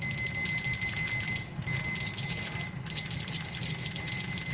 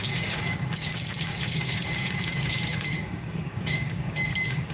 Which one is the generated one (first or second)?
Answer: second